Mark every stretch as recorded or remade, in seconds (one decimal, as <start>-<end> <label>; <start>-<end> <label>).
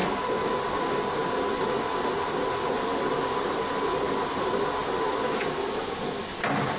0.0-6.8 recorded